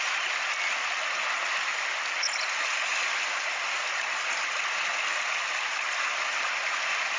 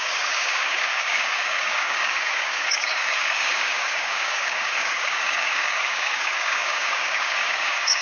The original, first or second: first